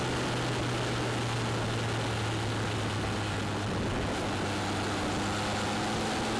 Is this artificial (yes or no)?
no